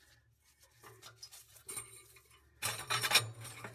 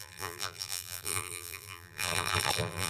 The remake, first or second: second